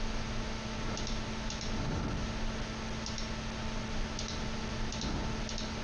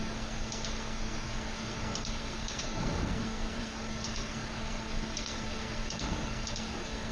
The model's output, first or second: second